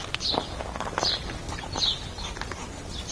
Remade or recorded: recorded